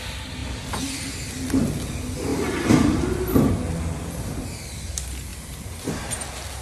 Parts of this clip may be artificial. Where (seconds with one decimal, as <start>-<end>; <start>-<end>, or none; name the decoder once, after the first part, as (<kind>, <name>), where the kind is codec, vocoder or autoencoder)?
2.3-3.5 (vocoder, BigVGAN v2); 5.3-6.6